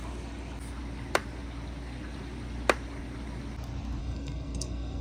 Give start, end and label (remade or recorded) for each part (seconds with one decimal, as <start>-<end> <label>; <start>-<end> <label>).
0.0-4.0 recorded; 4.0-5.0 remade